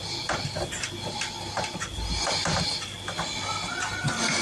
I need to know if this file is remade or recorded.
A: recorded